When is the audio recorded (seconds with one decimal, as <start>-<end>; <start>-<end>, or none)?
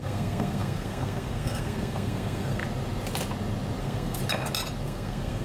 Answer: 2.6-3.8; 4.2-4.8